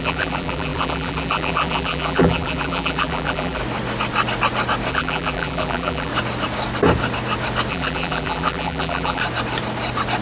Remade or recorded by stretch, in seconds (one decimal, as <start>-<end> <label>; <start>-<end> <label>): 0.0-3.6 remade; 3.6-4.9 recorded; 4.9-6.1 remade; 6.1-7.7 recorded; 7.7-9.2 remade; 9.2-10.2 recorded